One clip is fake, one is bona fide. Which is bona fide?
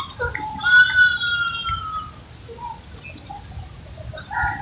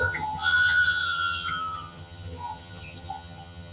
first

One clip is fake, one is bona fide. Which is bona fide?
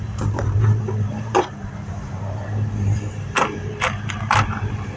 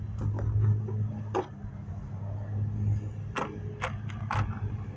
second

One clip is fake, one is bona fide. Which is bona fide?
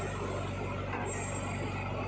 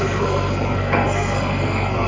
first